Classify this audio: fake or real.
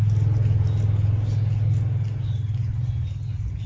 real